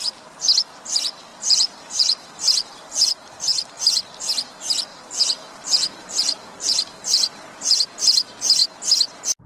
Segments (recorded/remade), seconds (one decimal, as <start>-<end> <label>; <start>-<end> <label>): 0.0-1.3 recorded; 1.3-3.1 remade; 3.1-4.9 recorded; 4.9-7.6 remade; 7.6-9.5 recorded